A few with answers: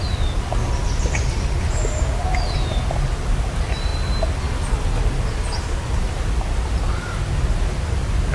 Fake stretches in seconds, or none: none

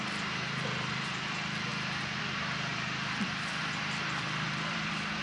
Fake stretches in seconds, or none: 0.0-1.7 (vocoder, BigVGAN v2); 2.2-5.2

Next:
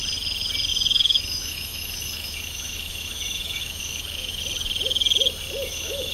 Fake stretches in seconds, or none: 0.7-4.4 (autoencoder, DAC-VAE); 5.6-6.1

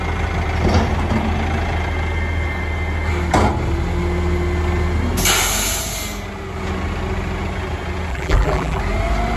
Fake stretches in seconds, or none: 8.1-8.8 (vocoder, BigVGAN v2)